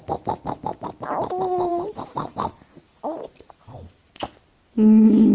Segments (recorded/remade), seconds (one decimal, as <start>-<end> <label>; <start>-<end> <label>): 0.0-1.7 recorded; 1.7-4.1 remade; 4.1-5.3 recorded